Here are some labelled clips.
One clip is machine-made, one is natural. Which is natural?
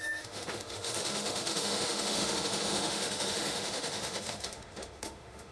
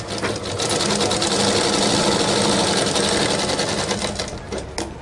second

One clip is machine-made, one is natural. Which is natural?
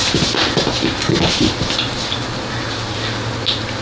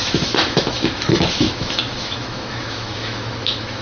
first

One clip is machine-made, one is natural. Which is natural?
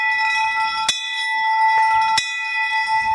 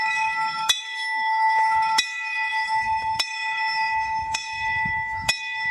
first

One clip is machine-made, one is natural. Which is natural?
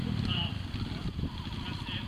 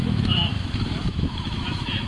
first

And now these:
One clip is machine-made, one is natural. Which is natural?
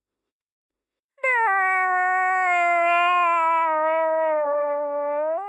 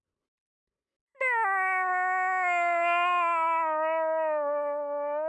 second